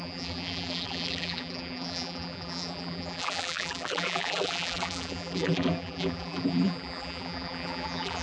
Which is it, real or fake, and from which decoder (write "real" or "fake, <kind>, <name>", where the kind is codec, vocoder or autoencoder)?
fake, vocoder, BigVGAN v2